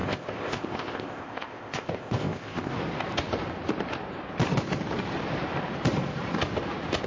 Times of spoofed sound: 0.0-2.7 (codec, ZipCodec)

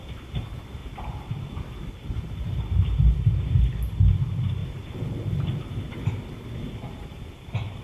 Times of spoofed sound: none

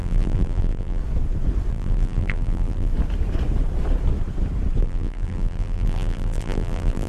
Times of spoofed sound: 0.0-1.0 (vocoder, BigVGAN v2); 1.7-2.9; 4.8-7.1

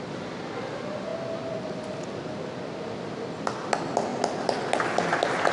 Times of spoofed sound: none

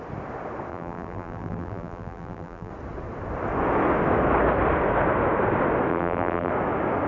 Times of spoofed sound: 0.7-2.7 (vocoder, BigVGAN v2); 5.9-6.5

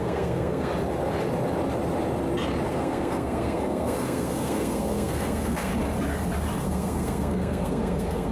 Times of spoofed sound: 0.0-0.7 (codec, SNAC); 2.7-5.7; 6.6-8.3

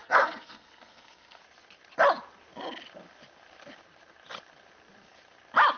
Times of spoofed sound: 0.0-1.4 (codec, SNAC)